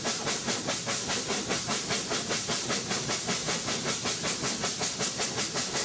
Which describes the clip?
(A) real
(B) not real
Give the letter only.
A